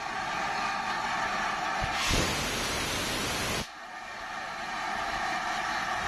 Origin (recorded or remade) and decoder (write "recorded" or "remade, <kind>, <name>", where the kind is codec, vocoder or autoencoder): recorded